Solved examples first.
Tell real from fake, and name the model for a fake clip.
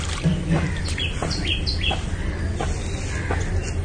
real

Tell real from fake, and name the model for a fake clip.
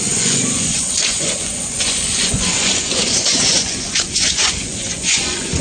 fake, vocoder, Vocos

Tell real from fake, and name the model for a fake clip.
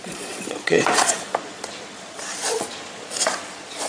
fake, vocoder, Vocos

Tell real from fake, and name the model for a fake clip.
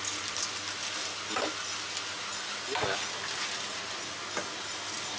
real